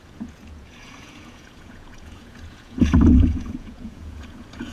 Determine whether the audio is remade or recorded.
remade